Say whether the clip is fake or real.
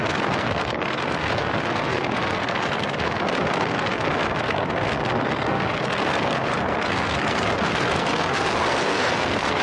fake